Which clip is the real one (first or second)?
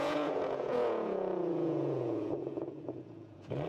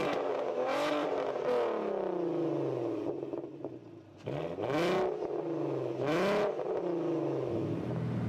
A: second